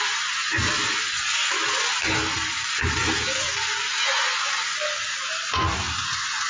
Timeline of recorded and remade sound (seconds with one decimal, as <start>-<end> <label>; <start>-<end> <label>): 0.0-6.5 recorded